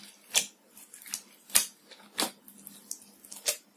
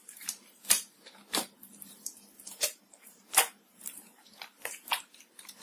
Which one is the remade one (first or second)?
second